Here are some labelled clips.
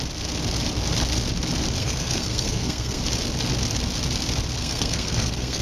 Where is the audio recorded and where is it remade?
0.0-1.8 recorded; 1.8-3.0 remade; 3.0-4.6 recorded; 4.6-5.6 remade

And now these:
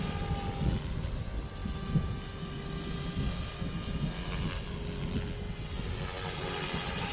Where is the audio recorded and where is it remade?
0.0-7.1 recorded

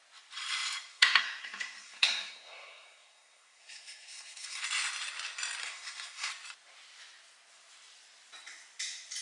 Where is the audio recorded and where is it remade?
0.0-0.9 recorded; 0.9-4.6 remade; 4.6-5.6 recorded; 5.6-6.3 remade; 6.3-9.2 recorded

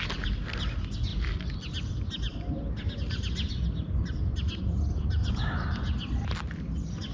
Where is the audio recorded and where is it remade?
0.0-7.1 recorded

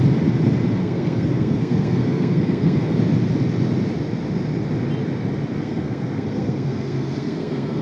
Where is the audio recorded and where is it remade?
0.0-0.8 recorded; 0.8-2.9 remade; 2.9-5.6 recorded; 5.6-7.8 remade

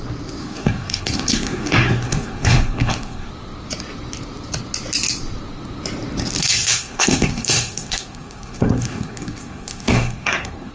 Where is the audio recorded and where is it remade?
0.0-0.4 recorded; 0.4-3.3 remade; 3.3-6.4 recorded; 6.4-10.7 remade